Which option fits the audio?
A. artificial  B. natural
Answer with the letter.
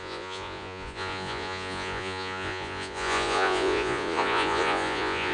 A